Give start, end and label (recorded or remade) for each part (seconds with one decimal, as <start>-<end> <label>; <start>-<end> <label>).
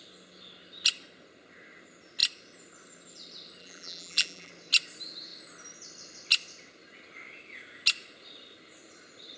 0.0-3.6 recorded; 3.6-4.5 remade; 4.5-9.4 recorded